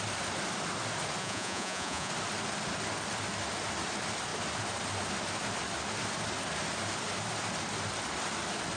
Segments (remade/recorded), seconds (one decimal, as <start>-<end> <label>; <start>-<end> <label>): 0.0-1.2 recorded; 1.2-2.1 remade; 2.1-8.8 recorded